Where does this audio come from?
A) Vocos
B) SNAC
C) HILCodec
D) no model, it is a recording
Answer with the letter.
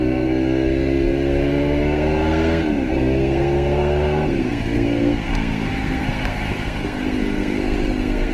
B